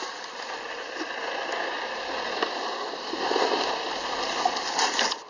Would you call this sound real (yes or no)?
yes